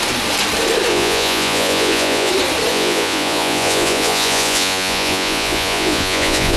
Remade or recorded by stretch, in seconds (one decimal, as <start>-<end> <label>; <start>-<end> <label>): 0.0-0.9 recorded; 0.9-2.3 remade; 2.3-2.7 recorded; 2.7-6.6 remade